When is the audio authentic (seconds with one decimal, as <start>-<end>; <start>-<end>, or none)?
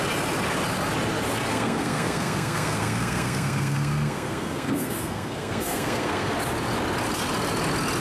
0.0-1.5; 6.3-8.0